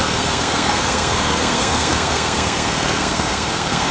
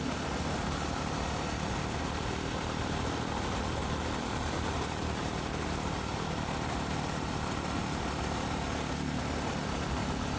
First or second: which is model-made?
first